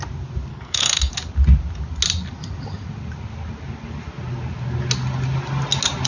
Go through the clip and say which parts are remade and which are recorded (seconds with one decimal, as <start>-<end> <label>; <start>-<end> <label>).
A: 0.0-0.5 recorded; 0.5-1.1 remade; 1.1-6.1 recorded